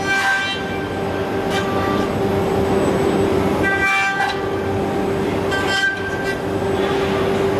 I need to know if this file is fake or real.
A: real